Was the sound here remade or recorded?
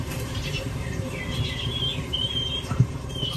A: remade